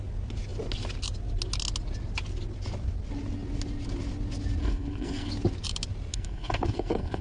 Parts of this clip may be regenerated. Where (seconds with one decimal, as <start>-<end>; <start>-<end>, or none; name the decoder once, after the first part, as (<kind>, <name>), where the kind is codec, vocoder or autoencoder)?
4.6-5.3 (codec, SNAC); 6.1-7.2